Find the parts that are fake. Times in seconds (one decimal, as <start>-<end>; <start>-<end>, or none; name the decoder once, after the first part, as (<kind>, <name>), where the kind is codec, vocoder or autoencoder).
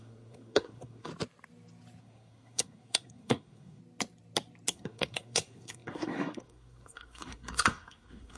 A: 0.0-1.1 (codec, SNAC); 2.0-3.8; 4.7-8.4